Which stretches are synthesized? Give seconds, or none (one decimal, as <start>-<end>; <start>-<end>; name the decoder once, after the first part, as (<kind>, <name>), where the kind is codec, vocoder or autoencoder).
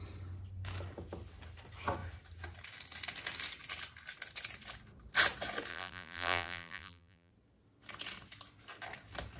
5.7-7.3 (vocoder, BigVGAN v2)